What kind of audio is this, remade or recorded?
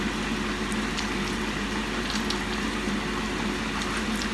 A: recorded